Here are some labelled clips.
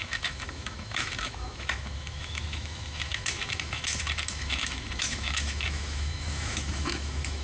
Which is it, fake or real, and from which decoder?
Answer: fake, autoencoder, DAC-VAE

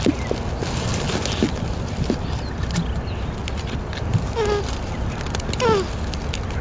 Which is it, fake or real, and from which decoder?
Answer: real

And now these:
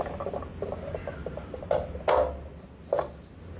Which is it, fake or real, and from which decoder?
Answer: real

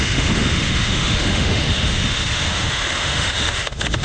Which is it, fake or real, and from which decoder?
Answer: fake, autoencoder, DAC-VAE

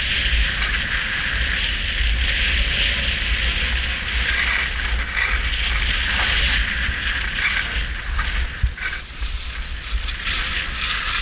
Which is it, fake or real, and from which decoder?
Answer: real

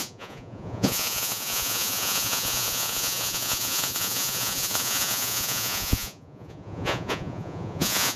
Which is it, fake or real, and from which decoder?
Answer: fake, vocoder, Vocos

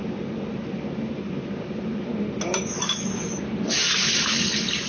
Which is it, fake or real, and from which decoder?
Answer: real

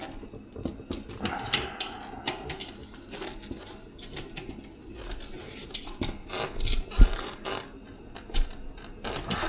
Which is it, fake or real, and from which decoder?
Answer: real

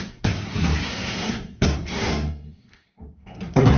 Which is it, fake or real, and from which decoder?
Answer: fake, codec, SNAC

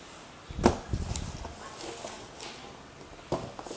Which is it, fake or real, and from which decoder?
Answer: real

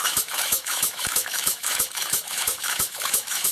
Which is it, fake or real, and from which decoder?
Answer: fake, autoencoder, DAC-VAE